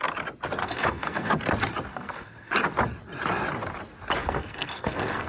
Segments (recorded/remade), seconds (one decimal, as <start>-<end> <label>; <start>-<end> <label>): 0.0-0.6 recorded; 0.6-1.4 remade; 1.4-1.9 recorded; 1.9-2.5 remade; 2.5-4.2 recorded; 4.2-5.3 remade